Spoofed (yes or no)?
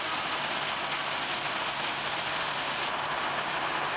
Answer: no